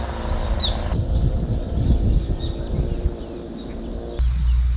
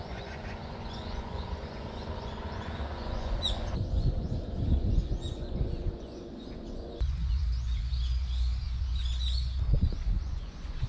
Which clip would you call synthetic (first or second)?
second